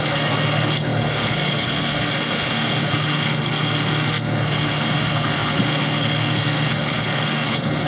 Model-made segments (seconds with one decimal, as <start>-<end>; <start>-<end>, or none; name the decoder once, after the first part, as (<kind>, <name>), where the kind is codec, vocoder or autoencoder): 0.0-7.9 (codec, SNAC)